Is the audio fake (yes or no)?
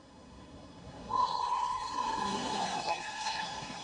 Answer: yes